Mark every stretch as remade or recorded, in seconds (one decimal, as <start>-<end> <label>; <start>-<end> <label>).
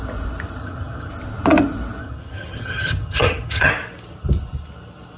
0.0-0.6 recorded; 0.6-1.1 remade; 1.1-2.0 recorded; 2.0-3.7 remade; 3.7-5.2 recorded